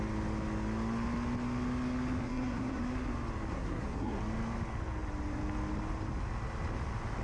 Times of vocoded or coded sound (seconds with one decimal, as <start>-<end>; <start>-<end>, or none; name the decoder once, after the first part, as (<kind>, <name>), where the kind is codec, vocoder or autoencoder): 2.2-2.9 (codec, SNAC); 3.5-4.2